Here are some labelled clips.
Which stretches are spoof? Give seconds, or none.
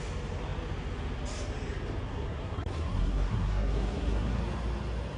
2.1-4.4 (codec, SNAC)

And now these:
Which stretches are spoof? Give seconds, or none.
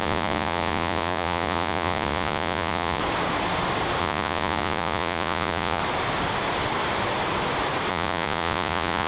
0.0-3.0 (vocoder, Vocos); 4.0-5.8; 7.9-9.1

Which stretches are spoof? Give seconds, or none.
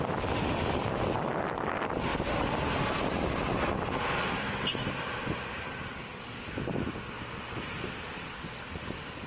none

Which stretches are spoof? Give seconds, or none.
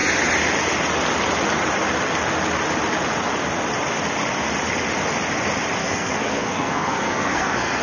5.8-7.8 (codec, SNAC)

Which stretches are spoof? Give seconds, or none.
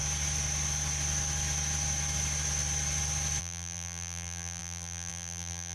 3.4-5.7 (vocoder, BigVGAN v2)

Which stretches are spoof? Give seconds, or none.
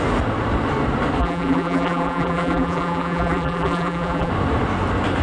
1.2-4.3 (vocoder, BigVGAN v2)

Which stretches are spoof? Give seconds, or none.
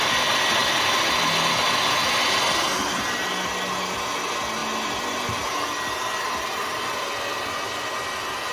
none